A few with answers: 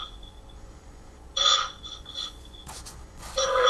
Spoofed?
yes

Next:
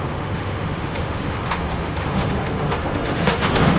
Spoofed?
yes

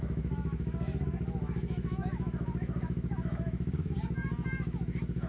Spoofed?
yes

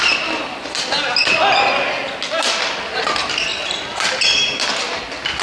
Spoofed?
no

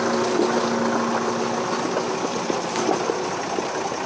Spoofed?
no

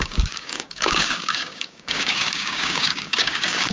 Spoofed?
yes